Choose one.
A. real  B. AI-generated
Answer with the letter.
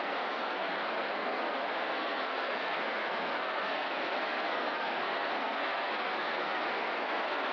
B